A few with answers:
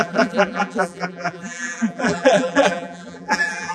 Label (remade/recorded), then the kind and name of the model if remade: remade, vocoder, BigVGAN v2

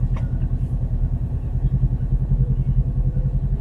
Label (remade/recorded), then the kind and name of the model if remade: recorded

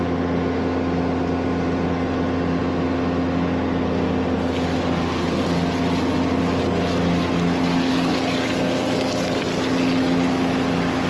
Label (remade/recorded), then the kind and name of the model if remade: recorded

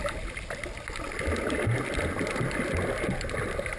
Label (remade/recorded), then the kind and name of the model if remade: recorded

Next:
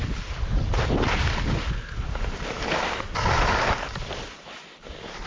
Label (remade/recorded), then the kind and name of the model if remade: remade, vocoder, BigVGAN v2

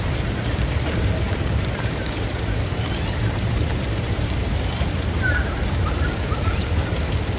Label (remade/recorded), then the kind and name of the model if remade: remade, vocoder, BigVGAN v2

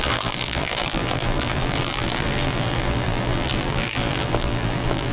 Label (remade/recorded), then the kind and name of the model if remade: remade, vocoder, BigVGAN v2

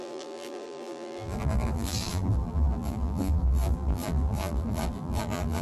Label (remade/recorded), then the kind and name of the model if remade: remade, vocoder, BigVGAN v2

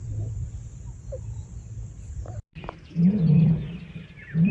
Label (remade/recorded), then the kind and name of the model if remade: remade, vocoder, BigVGAN v2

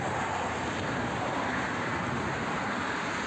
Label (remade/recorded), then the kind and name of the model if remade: recorded